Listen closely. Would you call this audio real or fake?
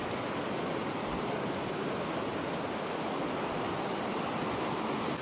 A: real